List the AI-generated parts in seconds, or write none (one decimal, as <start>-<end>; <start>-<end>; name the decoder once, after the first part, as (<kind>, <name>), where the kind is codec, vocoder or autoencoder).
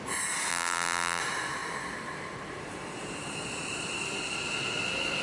0.5-1.2 (vocoder, BigVGAN v2)